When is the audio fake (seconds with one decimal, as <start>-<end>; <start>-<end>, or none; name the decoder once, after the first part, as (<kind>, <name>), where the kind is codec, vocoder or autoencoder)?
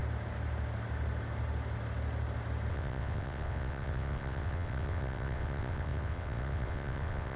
2.7-7.4 (vocoder, WaveNeXt)